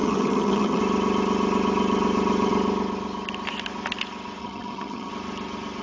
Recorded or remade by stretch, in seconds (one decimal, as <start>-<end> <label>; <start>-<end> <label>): 0.0-0.8 remade; 0.8-4.4 recorded; 4.4-5.1 remade; 5.1-5.8 recorded